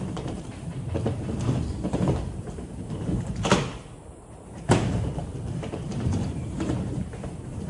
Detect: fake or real fake